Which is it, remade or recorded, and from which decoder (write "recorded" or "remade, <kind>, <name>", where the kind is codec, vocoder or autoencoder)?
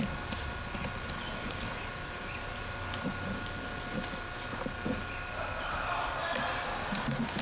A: recorded